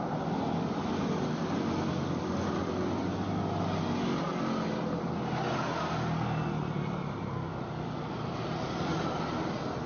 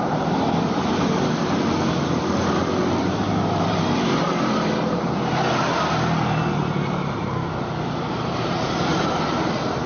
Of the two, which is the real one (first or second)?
first